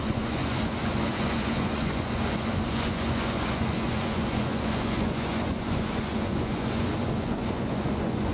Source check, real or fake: fake